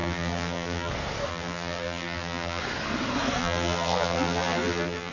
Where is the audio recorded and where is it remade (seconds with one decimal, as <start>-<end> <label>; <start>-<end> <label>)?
0.0-0.9 remade; 0.9-1.3 recorded; 1.3-2.6 remade; 2.6-3.4 recorded; 3.4-5.1 remade